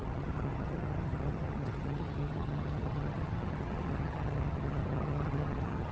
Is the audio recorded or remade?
remade